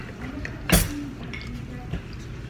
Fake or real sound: real